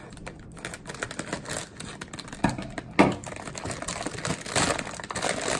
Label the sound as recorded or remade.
recorded